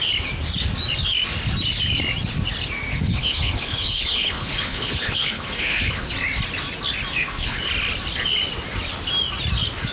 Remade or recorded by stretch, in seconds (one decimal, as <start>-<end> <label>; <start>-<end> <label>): 0.0-2.9 recorded; 2.9-6.1 remade; 6.1-7.1 recorded; 7.1-7.7 remade; 7.7-9.9 recorded